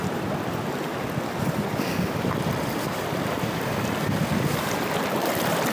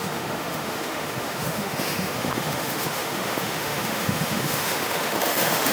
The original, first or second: first